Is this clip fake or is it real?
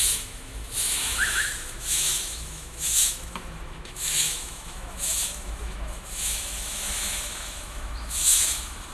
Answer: fake